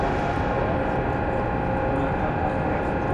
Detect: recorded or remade recorded